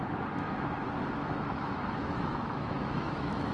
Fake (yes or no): yes